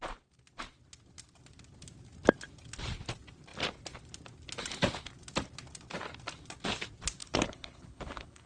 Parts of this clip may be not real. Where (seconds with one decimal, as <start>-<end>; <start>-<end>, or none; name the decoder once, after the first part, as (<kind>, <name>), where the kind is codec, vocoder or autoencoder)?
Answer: 7.2-8.5 (codec, HILCodec)